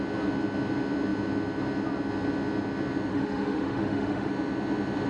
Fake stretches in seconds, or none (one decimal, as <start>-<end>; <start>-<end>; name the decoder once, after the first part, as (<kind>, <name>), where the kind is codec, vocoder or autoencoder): 3.1-4.3 (autoencoder, DAC-VAE)